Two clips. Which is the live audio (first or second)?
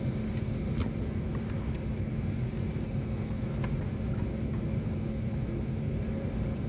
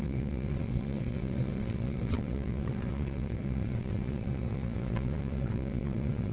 first